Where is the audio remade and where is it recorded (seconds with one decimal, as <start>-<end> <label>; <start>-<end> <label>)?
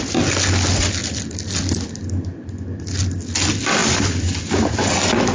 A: 0.0-5.3 recorded